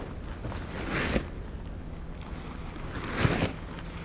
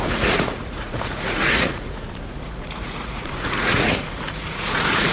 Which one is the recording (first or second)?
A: first